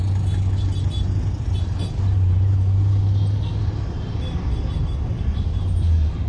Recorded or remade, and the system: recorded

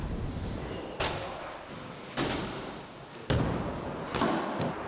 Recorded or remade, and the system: recorded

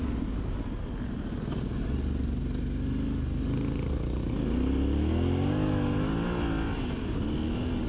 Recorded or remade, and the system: recorded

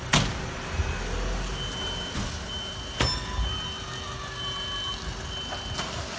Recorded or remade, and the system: recorded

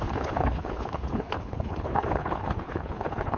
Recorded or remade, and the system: remade, codec, HILCodec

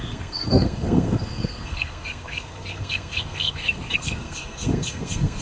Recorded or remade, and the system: remade, codec, SNAC